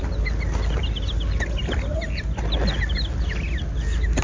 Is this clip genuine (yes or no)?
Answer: yes